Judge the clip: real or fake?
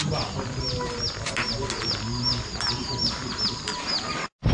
real